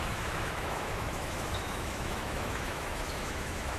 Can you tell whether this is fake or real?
fake